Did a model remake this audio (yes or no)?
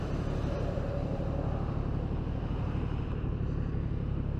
yes